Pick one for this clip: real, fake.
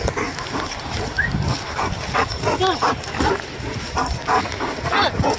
real